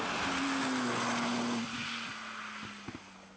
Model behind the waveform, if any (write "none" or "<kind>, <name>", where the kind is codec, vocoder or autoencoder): none